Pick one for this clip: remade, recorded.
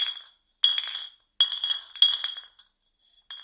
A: recorded